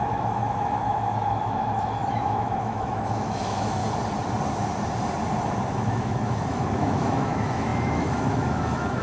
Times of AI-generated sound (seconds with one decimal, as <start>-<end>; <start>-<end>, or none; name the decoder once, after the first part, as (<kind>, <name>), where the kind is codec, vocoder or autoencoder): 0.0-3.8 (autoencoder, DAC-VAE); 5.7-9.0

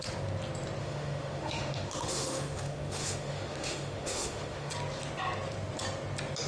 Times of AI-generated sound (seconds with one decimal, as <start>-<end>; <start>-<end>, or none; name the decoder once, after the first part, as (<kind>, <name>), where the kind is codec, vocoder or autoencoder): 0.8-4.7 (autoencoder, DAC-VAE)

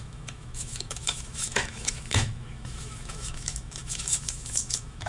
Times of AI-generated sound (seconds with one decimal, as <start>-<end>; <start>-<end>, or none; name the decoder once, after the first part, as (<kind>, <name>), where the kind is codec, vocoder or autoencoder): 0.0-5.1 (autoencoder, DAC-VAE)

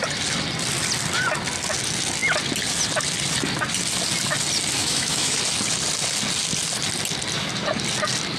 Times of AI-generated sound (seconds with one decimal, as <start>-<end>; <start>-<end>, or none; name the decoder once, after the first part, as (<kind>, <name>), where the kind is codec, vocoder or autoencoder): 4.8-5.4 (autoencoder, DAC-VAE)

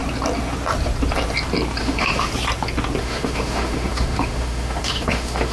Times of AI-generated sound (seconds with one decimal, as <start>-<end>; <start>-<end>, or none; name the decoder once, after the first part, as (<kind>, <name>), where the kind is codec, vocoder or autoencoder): 1.8-2.3 (autoencoder, DAC-VAE); 3.0-5.5

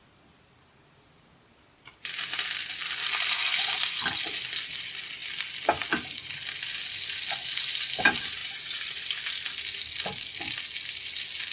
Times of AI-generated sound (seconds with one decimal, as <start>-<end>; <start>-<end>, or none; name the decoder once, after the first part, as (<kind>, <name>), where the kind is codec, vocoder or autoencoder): none

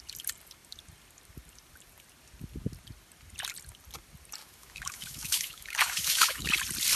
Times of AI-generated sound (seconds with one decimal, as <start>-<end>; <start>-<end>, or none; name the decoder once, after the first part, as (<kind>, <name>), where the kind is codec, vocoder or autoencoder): 4.4-6.5 (autoencoder, DAC-VAE)

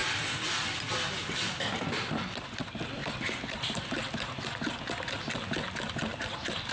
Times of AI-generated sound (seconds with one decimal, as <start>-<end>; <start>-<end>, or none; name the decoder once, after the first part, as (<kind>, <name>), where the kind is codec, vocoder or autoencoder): none